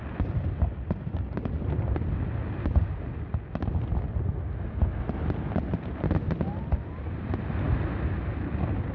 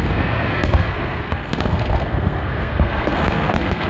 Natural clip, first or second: first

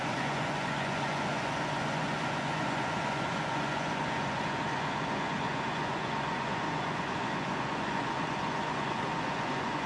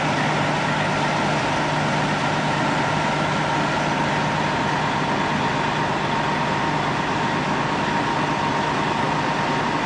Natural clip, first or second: second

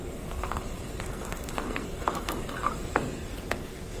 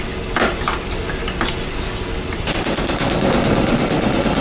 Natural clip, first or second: second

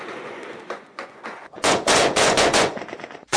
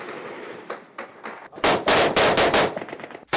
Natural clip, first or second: second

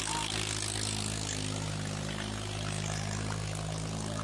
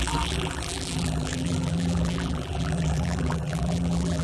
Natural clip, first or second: first